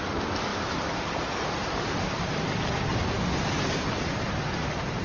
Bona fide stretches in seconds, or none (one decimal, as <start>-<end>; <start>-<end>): 0.0-0.5; 1.9-5.0